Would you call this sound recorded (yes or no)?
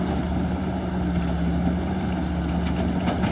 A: yes